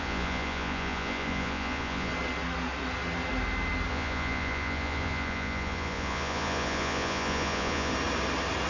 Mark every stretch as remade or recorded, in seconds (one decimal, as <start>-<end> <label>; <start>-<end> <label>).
0.0-2.1 remade; 2.1-3.9 recorded; 3.9-7.9 remade; 7.9-8.7 recorded